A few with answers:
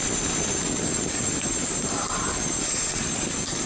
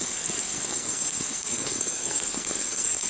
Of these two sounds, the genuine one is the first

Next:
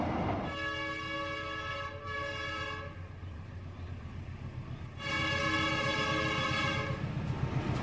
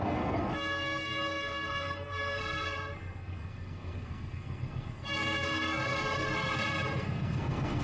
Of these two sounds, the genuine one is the first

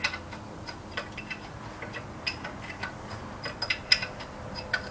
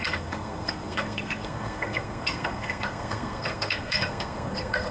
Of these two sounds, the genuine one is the first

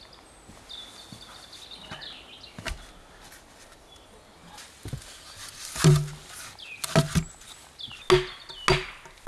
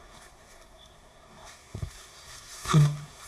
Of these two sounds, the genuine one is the first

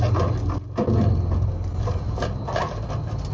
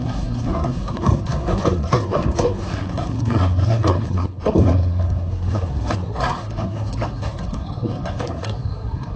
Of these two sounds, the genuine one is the first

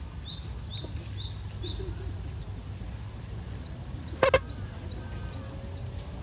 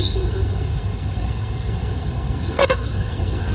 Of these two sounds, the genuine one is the first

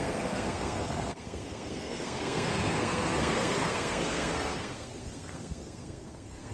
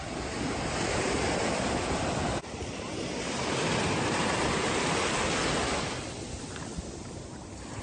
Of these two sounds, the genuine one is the second